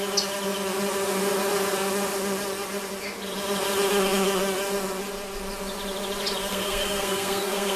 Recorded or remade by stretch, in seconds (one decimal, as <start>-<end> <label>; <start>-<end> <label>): 0.0-6.5 recorded; 6.5-7.8 remade